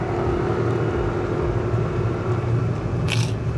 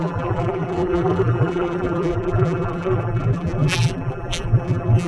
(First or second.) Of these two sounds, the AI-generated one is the second